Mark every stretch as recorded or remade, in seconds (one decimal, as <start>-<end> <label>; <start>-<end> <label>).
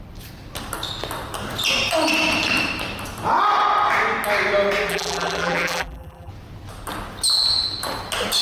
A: 0.0-4.9 recorded; 4.9-6.3 remade; 6.3-8.4 recorded